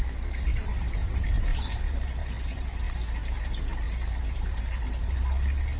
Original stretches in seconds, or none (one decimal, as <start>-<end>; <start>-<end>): 0.0-5.8